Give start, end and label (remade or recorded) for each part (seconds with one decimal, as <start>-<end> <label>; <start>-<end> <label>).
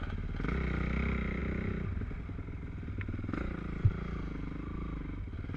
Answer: 0.0-5.6 recorded